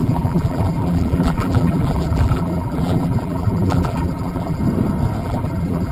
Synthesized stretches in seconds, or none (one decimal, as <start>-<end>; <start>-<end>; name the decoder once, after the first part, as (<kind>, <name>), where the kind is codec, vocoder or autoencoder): 0.0-4.6 (vocoder, BigVGAN v2); 5.2-5.9